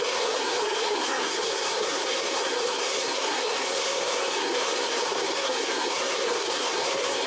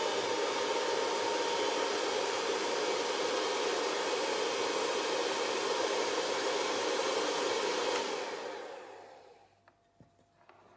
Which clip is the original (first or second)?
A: second